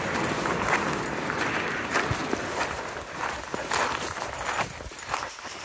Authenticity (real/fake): fake